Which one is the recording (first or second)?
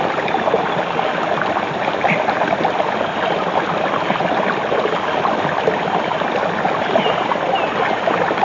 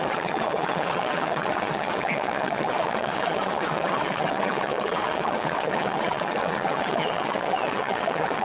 first